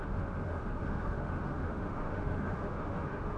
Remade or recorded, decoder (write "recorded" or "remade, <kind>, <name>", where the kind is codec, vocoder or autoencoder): remade, autoencoder, DAC-VAE